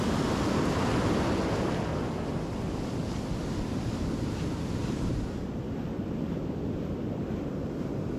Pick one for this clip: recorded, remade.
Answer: recorded